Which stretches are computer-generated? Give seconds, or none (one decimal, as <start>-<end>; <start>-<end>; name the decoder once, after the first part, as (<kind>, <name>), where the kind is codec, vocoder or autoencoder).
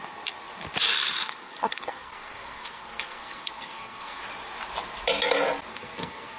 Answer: 0.9-4.2 (codec, SNAC); 5.7-6.4